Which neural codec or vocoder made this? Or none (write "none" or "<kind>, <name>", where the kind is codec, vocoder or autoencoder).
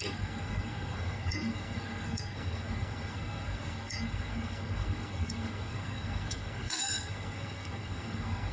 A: codec, SNAC